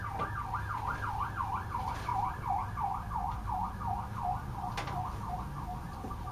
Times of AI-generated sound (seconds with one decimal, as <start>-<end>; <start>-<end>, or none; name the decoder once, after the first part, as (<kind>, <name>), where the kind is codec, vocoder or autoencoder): none